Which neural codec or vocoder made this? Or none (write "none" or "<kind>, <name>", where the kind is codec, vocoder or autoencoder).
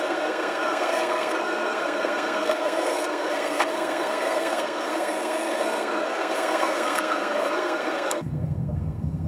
codec, SNAC